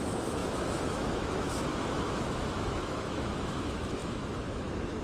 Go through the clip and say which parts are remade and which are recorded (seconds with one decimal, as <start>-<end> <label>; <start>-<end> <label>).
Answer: 0.0-5.0 remade